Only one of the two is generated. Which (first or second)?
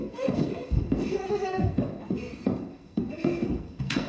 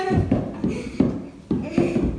first